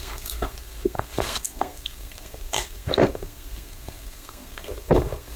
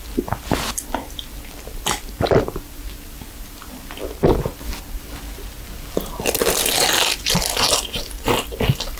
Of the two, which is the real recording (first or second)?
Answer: second